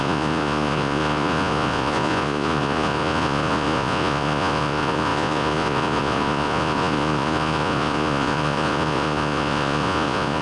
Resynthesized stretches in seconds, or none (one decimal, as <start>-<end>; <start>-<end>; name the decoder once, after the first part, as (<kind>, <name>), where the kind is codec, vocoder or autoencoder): 0.0-10.4 (vocoder, Vocos)